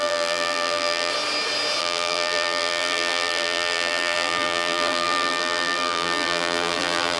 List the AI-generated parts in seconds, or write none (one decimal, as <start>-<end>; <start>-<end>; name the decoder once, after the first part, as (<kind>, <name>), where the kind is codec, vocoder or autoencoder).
0.0-1.1 (vocoder, BigVGAN v2); 1.8-7.2